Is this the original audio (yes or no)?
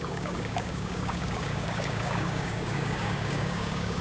no